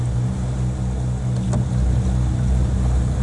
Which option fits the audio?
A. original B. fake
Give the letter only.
A